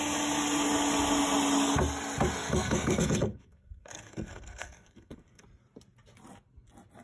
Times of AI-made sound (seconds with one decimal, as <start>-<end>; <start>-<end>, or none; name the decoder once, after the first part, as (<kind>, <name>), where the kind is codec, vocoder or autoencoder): 2.4-5.4 (codec, SNAC)